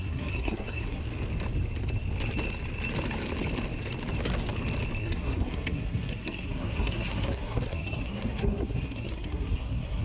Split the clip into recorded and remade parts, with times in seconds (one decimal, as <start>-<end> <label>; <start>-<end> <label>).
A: 0.0-1.0 remade; 1.0-5.0 recorded; 5.0-10.0 remade